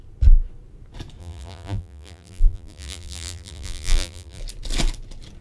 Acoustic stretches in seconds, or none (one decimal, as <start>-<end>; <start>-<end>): 0.0-1.2; 4.4-5.4